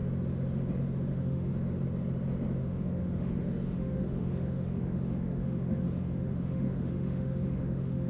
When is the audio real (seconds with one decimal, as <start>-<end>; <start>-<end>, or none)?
0.0-1.1; 1.5-2.6